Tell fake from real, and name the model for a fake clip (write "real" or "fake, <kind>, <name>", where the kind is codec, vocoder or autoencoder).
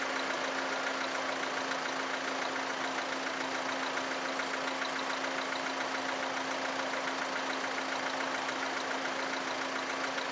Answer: real